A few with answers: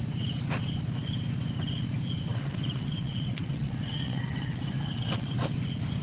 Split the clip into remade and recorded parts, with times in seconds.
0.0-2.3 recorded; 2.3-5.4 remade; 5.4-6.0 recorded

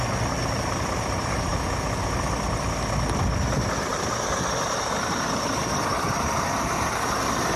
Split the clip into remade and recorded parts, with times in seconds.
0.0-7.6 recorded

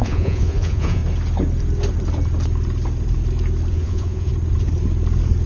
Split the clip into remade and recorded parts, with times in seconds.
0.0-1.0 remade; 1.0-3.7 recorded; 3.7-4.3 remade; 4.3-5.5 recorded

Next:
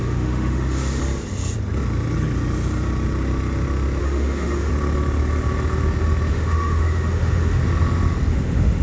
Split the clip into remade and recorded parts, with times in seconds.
0.0-1.0 remade; 1.0-4.0 recorded; 4.0-4.7 remade; 4.7-6.3 recorded; 6.3-7.6 remade; 7.6-8.3 recorded; 8.3-8.8 remade